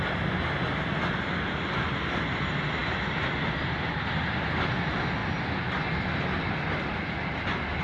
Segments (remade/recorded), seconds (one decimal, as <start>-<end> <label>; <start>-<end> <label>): 0.0-7.8 recorded